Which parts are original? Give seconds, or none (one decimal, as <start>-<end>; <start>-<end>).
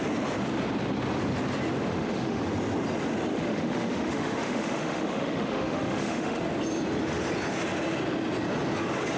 0.0-1.9; 2.4-3.3; 6.4-9.2